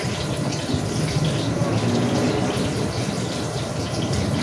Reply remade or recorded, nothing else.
recorded